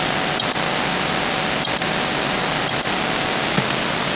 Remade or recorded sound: recorded